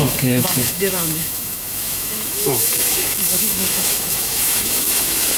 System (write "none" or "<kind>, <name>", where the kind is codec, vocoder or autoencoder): autoencoder, DAC-VAE